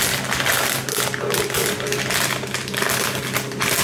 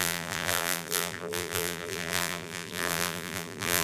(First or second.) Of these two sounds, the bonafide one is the first